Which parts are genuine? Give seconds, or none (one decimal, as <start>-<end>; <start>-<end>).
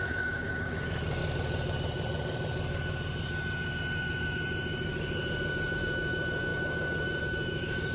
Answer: 1.2-5.7